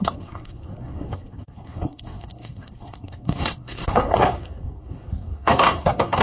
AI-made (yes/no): yes